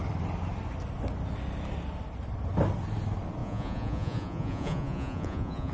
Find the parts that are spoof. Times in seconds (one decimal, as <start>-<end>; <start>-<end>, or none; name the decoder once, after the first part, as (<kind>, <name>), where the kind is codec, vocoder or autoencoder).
3.4-5.7 (vocoder, Vocos)